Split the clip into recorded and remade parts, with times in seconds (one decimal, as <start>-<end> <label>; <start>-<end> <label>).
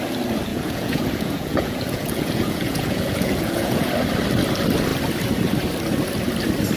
0.0-0.5 recorded; 0.5-3.9 remade; 3.9-6.8 recorded